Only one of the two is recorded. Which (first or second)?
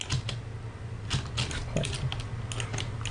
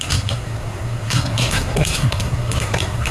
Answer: first